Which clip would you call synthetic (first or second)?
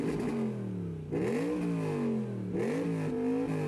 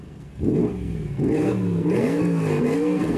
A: second